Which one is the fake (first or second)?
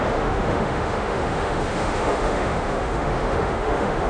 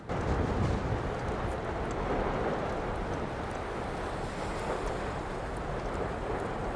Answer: first